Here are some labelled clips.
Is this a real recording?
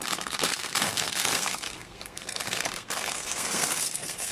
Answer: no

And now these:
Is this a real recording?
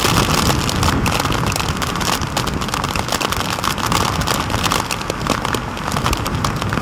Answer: yes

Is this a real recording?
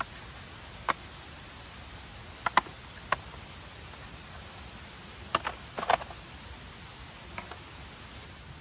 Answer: yes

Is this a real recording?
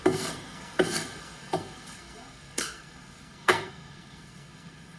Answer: no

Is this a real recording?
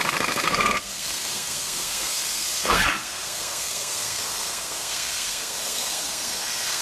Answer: no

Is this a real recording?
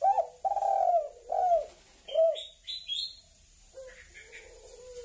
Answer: yes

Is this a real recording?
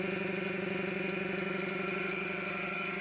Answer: yes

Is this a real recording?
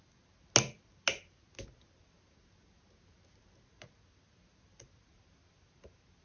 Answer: yes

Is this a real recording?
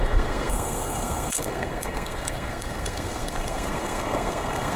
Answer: no